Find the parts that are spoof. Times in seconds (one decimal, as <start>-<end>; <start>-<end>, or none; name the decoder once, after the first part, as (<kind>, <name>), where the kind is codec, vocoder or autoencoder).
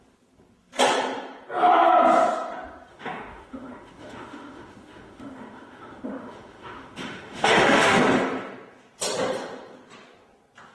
2.9-8.0 (autoencoder, DAC-VAE)